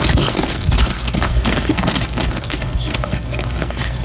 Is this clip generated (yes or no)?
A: yes